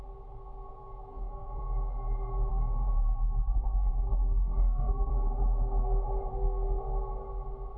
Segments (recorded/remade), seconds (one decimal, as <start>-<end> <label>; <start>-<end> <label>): 0.0-1.1 recorded; 1.1-1.6 remade; 1.6-2.5 recorded; 2.5-5.1 remade; 5.1-6.3 recorded; 6.3-6.8 remade; 6.8-7.8 recorded